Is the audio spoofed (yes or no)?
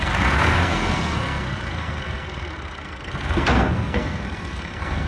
yes